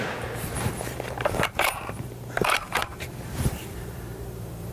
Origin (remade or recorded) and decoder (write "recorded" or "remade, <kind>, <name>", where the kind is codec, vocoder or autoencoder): remade, vocoder, BigVGAN v2